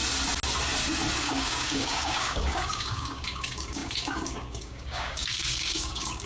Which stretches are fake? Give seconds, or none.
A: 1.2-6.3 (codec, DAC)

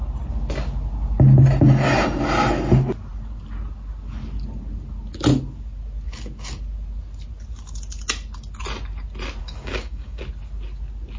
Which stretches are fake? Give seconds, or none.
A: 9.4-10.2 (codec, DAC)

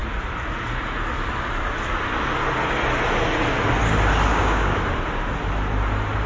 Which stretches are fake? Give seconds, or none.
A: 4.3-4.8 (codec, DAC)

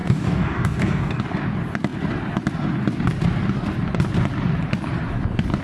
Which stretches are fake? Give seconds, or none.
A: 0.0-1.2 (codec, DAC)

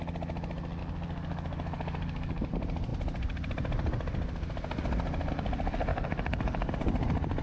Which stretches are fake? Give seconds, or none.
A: 0.8-2.5 (codec, DAC); 5.9-6.7

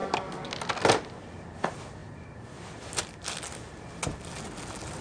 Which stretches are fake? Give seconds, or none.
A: 0.0-0.5 (codec, DAC)

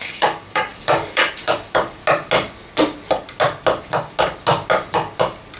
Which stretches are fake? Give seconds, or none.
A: 0.0-2.0 (codec, DAC)